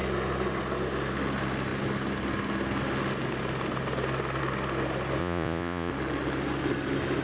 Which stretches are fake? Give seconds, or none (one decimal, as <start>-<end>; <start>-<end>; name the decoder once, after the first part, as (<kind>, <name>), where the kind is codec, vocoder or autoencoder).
5.2-5.9 (vocoder, Vocos)